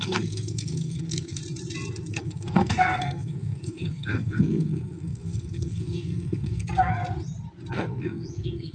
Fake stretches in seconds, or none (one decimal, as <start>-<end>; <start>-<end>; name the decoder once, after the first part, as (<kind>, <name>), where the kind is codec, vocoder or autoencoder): 0.0-1.4 (codec, SNAC); 2.1-7.0; 7.7-8.7